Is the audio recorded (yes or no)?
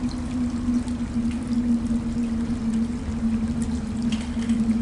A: yes